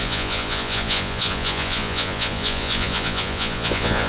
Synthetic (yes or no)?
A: yes